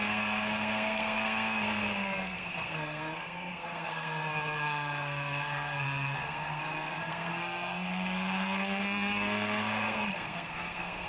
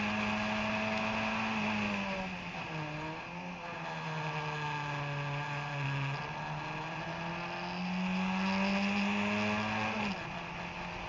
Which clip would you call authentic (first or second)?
second